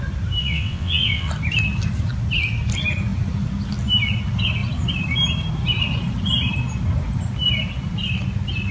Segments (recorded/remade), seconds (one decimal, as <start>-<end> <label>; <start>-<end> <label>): 0.0-0.4 recorded; 0.4-1.3 remade; 1.3-8.7 recorded